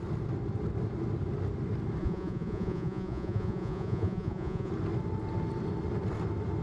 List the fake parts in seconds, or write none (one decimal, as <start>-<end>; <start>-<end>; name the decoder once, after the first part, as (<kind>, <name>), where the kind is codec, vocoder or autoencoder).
2.0-4.7 (vocoder, Vocos)